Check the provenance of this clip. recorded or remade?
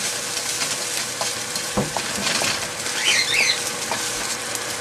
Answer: remade